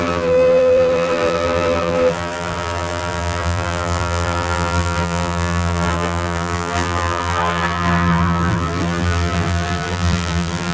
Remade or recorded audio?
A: remade